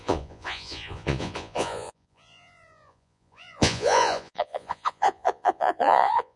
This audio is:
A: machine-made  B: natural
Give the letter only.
A